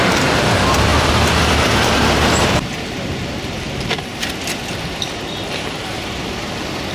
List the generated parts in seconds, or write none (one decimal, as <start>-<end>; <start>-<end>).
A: 0.0-0.9; 2.0-4.1; 6.2-6.9